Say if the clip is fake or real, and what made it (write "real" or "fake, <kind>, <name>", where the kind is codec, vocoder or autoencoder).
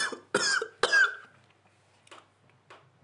real